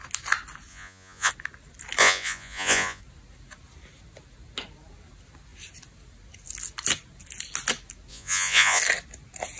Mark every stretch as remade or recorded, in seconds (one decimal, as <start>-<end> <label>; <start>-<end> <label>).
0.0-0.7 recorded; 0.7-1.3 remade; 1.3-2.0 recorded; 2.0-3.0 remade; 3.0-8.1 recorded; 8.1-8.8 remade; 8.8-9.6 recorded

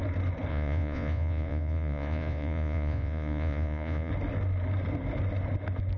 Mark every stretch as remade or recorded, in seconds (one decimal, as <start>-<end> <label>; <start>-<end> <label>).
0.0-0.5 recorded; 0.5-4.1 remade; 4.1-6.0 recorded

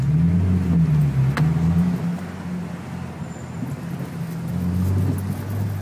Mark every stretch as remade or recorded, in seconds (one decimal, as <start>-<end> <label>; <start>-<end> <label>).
0.0-5.8 recorded

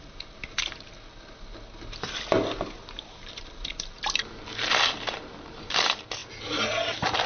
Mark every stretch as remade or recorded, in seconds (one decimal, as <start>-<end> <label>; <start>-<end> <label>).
0.0-0.9 remade; 0.9-3.1 recorded; 3.1-7.3 remade